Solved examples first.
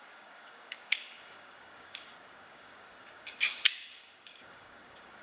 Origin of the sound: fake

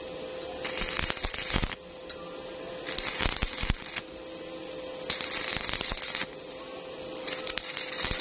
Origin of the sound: real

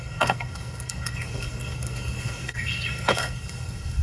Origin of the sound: fake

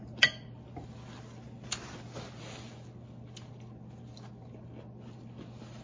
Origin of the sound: real